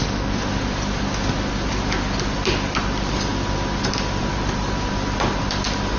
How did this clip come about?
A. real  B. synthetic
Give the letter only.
A